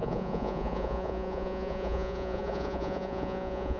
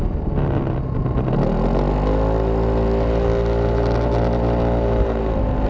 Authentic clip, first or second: second